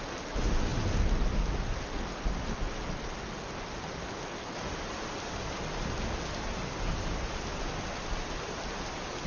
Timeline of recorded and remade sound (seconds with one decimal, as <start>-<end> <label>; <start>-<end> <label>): 0.0-9.3 recorded